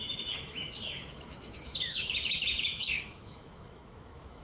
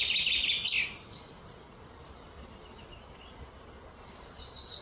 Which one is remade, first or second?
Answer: first